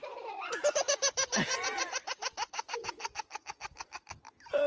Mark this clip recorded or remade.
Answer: recorded